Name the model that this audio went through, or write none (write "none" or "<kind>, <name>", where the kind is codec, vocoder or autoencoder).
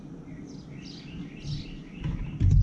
none